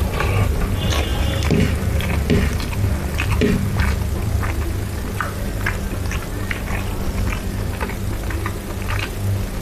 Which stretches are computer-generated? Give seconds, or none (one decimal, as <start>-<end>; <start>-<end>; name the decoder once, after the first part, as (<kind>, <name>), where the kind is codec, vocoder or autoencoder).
none